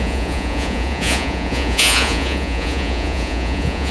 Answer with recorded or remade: remade